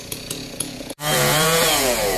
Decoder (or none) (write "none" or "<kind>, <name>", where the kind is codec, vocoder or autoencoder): vocoder, Vocos